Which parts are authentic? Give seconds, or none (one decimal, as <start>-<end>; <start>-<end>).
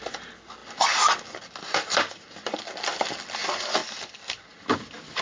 0.0-5.2